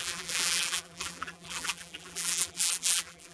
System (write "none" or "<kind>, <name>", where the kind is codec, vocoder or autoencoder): vocoder, BigVGAN v2